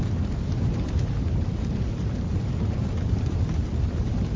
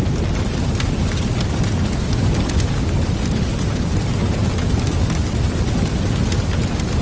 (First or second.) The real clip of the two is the second